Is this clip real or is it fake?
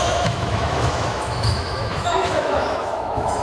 fake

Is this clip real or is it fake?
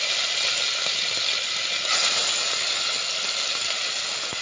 real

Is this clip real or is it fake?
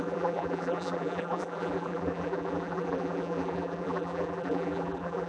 fake